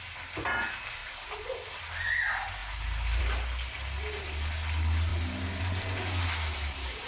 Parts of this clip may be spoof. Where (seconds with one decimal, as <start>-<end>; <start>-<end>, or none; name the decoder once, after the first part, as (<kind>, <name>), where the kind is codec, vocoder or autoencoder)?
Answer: none